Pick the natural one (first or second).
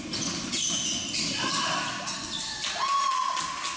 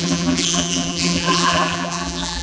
first